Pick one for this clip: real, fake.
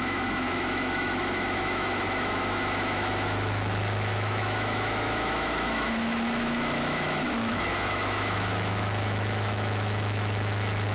fake